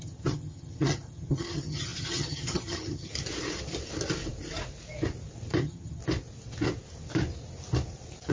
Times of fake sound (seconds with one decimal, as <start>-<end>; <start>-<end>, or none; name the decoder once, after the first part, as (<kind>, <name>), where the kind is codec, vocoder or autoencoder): 0.0-3.1 (vocoder, HiFi-GAN); 5.6-6.0